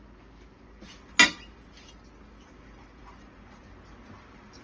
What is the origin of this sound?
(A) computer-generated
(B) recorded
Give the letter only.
B